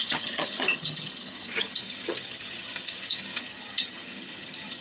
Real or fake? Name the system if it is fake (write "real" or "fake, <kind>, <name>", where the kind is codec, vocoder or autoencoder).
fake, vocoder, HiFi-GAN